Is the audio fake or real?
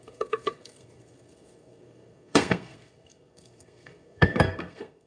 fake